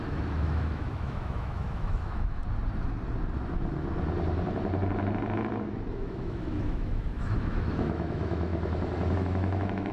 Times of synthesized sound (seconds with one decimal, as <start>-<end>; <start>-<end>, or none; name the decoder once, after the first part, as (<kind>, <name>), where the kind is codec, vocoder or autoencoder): 0.0-2.4 (autoencoder, DAC-VAE); 5.9-8.5; 9.1-9.9